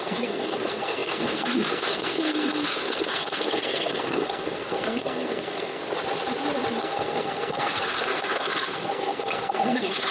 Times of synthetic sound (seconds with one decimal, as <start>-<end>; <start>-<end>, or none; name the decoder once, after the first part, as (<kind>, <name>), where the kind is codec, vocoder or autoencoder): 0.0-5.8 (codec, SNAC); 6.8-10.1